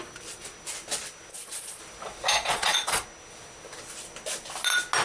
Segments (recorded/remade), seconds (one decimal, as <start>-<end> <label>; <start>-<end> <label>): 0.0-1.3 recorded; 1.3-1.8 remade; 1.8-2.4 recorded; 2.4-3.0 remade; 3.0-5.0 recorded